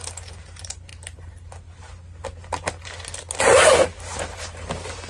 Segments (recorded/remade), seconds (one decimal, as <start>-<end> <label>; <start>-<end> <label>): 0.0-5.1 recorded